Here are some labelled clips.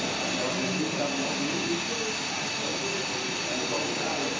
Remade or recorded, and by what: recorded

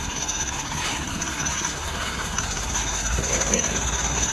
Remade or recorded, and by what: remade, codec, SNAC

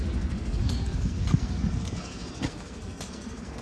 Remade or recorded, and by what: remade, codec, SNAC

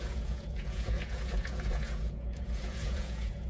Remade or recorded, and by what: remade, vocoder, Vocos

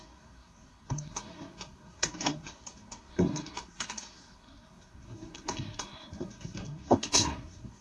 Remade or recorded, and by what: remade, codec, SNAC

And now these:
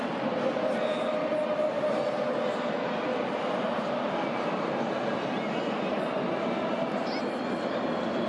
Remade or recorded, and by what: recorded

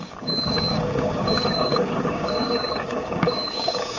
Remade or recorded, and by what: remade, codec, DAC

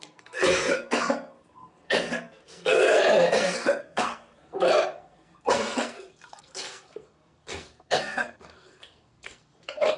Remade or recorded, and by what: remade, codec, SNAC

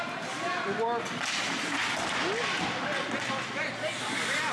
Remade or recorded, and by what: recorded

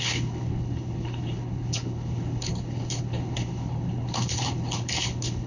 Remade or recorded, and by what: remade, codec, HILCodec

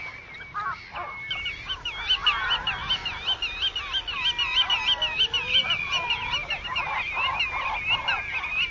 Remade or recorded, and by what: recorded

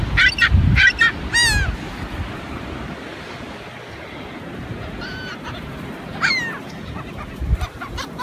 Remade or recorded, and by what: recorded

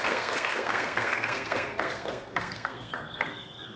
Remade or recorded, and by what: remade, codec, SNAC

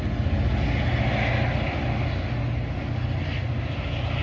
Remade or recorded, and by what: recorded